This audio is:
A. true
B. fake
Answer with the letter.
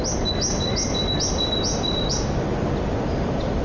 A